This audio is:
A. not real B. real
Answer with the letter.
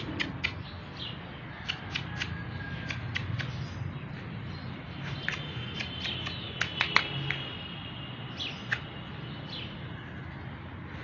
B